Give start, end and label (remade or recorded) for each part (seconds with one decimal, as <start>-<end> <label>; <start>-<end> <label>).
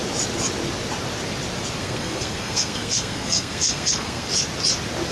0.0-1.8 recorded; 1.8-4.3 remade; 4.3-5.1 recorded